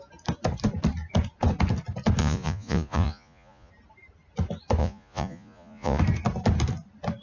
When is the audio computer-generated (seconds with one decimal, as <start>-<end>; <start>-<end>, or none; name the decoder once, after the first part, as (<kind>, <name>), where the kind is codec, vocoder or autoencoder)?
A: 2.2-3.7 (vocoder, Vocos); 4.8-6.0